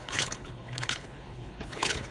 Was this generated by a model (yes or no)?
yes